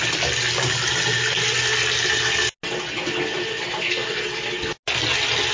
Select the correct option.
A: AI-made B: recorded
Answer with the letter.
B